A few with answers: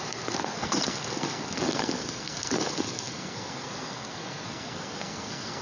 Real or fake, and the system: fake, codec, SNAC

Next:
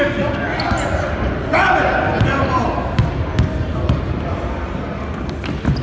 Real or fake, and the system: real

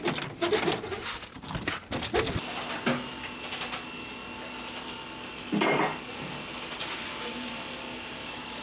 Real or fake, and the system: real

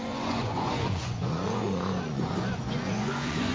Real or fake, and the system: fake, vocoder, Vocos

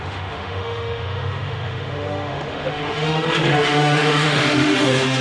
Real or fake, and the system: fake, autoencoder, DAC-VAE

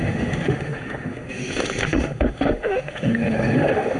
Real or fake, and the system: fake, autoencoder, DAC-VAE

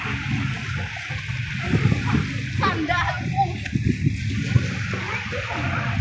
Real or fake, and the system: real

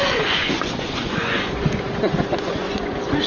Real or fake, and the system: fake, vocoder, Vocos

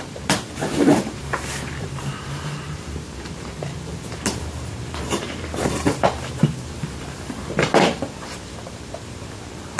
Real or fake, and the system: fake, vocoder, BigVGAN v2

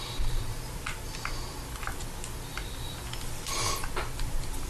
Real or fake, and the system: real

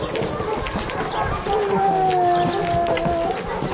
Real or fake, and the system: real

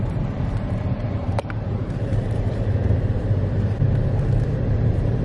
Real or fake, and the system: fake, vocoder, BigVGAN v2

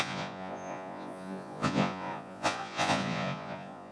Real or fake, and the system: fake, vocoder, Vocos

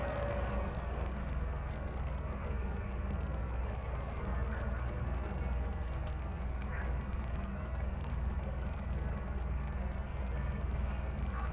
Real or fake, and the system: fake, codec, SNAC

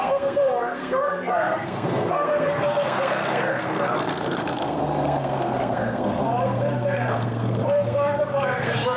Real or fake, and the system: fake, codec, SNAC